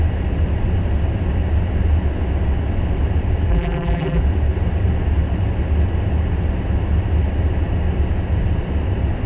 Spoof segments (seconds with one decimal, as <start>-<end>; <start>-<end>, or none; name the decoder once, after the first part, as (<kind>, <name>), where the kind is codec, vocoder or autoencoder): 3.5-4.2 (vocoder, BigVGAN v2)